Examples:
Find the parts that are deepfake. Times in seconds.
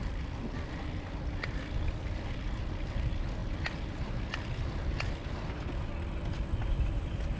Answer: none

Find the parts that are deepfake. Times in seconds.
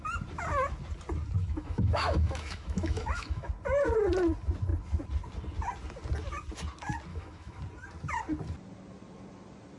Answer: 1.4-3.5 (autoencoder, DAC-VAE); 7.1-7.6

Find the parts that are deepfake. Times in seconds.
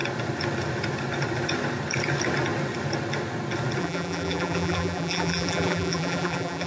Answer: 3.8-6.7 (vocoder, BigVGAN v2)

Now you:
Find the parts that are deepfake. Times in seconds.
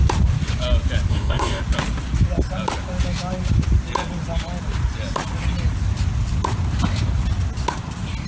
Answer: 1.1-1.6 (codec, DAC)